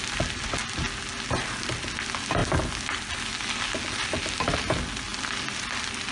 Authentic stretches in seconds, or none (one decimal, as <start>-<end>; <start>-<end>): 0.0-6.1

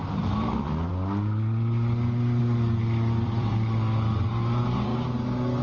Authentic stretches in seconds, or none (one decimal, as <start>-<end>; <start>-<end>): 0.9-2.4; 4.9-5.6

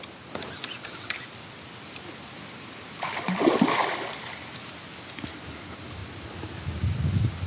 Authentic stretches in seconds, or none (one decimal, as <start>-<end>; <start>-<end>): 0.0-0.8; 4.7-7.5

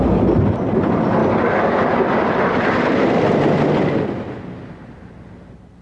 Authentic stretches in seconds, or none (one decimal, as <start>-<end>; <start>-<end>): 0.0-5.8

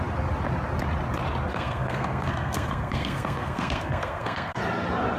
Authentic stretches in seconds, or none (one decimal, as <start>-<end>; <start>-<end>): 0.0-1.5; 4.6-5.2

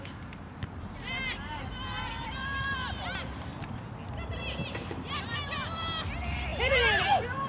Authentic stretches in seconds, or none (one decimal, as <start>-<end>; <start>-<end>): 3.5-4.7

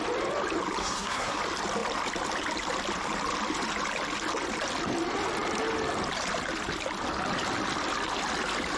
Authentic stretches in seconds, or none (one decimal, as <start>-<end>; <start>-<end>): 0.0-0.8; 1.4-8.8